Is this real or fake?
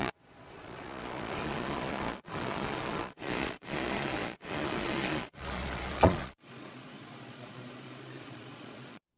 fake